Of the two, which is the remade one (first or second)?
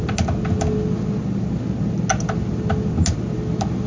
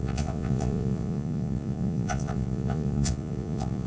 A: second